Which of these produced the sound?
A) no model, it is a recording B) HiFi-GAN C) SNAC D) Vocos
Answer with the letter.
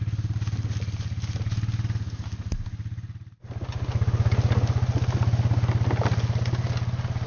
A